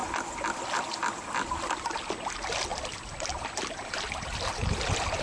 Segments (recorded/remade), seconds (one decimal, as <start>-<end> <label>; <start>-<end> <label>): 0.0-5.2 recorded